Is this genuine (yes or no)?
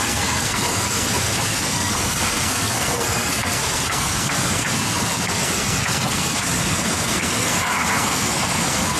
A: no